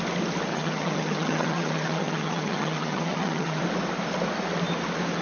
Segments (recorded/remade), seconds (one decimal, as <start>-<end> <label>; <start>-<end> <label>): 0.0-0.5 recorded; 0.5-3.6 remade; 3.6-5.2 recorded